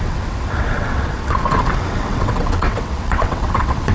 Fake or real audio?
fake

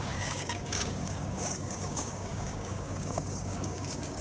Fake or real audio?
fake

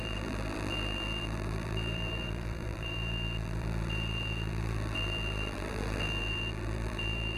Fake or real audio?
fake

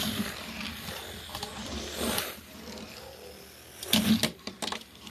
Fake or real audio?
real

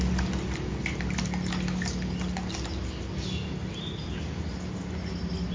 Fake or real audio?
real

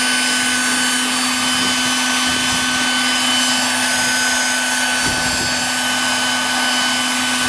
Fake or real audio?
real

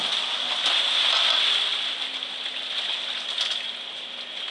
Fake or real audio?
real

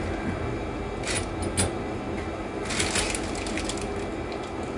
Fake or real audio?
real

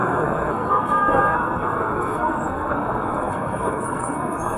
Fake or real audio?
fake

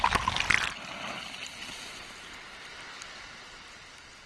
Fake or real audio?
real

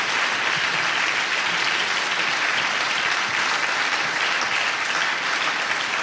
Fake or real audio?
real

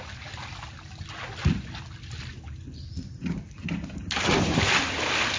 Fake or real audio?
real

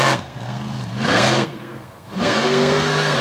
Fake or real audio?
fake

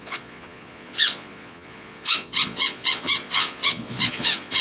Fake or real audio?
fake